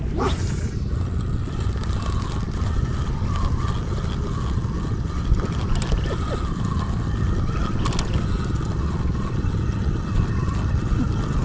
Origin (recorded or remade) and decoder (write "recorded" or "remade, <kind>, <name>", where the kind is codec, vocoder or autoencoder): recorded